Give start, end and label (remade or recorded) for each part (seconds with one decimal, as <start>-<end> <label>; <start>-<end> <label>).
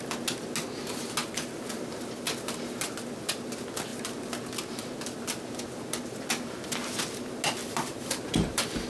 0.0-7.6 recorded; 7.6-8.9 remade